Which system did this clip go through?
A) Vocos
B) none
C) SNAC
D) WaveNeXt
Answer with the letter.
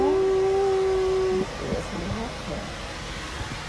B